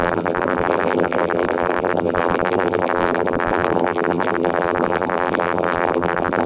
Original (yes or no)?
no